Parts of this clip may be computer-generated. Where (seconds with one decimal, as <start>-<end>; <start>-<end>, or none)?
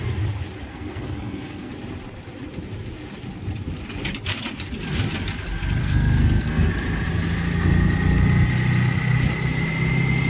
0.7-1.7; 5.8-6.7